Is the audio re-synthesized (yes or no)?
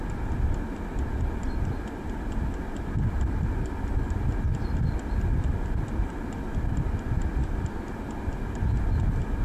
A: no